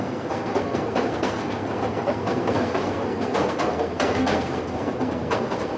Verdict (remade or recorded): remade